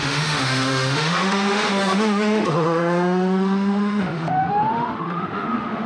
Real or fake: fake